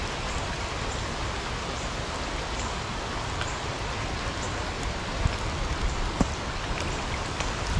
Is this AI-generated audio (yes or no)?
no